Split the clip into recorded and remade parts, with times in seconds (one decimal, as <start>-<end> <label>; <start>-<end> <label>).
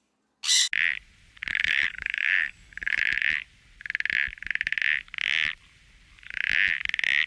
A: 0.0-1.5 recorded; 1.5-3.0 remade; 3.0-7.3 recorded